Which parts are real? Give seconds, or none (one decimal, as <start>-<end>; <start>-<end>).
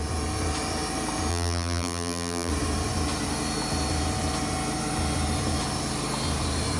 0.0-1.3; 2.5-6.8